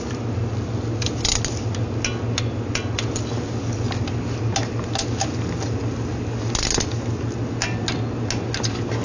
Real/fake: real